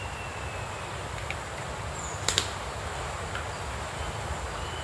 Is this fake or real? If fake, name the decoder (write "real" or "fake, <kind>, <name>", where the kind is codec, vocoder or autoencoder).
real